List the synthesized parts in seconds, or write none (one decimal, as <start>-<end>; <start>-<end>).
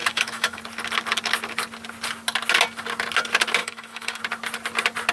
0.0-0.6; 3.6-4.2